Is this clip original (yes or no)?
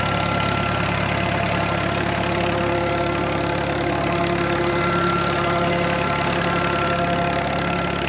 yes